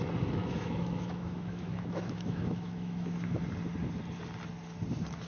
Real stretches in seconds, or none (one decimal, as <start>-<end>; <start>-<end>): 0.0-0.4; 3.4-5.3